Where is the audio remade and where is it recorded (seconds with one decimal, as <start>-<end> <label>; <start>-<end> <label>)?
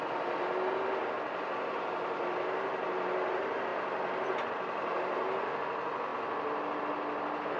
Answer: 0.0-7.6 recorded